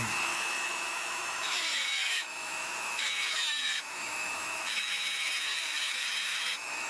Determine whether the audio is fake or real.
fake